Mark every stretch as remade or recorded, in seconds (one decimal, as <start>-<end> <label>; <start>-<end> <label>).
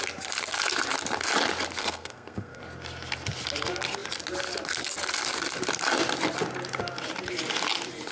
0.0-1.8 recorded; 1.8-2.6 remade; 2.6-8.1 recorded